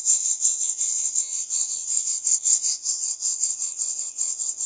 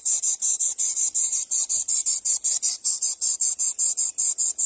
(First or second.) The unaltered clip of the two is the second